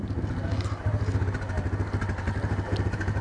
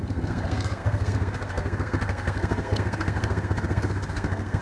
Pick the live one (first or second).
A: first